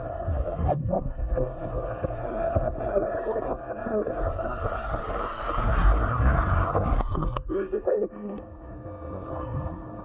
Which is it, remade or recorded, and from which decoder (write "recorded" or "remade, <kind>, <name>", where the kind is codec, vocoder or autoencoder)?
remade, codec, SNAC